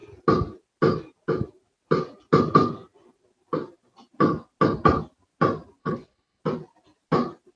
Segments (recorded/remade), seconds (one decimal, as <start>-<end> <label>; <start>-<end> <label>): 0.0-5.8 recorded; 5.8-6.4 remade; 6.4-7.6 recorded